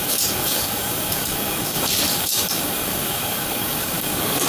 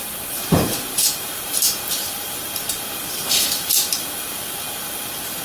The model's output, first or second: first